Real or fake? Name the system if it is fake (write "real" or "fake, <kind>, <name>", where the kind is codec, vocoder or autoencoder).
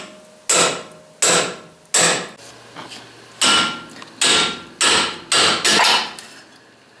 real